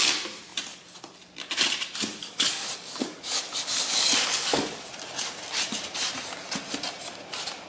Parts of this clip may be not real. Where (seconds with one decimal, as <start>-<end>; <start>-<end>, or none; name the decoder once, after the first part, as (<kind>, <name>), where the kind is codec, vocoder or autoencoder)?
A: 2.2-4.9 (codec, DAC)